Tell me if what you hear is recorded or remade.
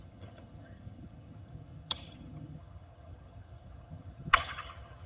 remade